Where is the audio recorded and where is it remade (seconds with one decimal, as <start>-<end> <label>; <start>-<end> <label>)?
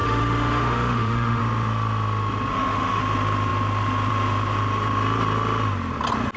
0.0-1.4 remade; 1.4-2.5 recorded; 2.5-3.0 remade; 3.0-6.4 recorded